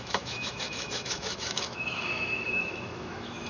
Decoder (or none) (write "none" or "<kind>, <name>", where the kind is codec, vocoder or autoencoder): autoencoder, DAC-VAE